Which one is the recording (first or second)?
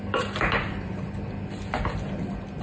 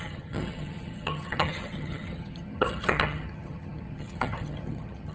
first